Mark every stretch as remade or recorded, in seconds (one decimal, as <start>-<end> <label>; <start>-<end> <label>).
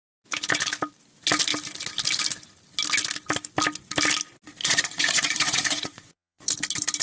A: 0.0-4.6 recorded; 4.6-6.5 remade; 6.5-7.0 recorded